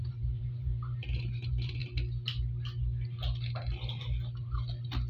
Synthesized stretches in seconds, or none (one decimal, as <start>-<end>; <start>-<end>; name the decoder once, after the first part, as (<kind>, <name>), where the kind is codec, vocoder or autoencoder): 0.0-1.8 (vocoder, BigVGAN v2)